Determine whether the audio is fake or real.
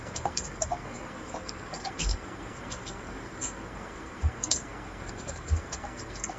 fake